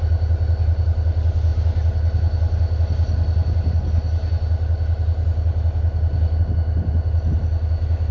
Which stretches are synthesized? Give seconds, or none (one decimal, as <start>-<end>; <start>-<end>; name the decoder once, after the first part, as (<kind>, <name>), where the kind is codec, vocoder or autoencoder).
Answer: none